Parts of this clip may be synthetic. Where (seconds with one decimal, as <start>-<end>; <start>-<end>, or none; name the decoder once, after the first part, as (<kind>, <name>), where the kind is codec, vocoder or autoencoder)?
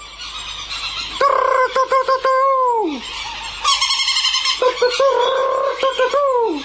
none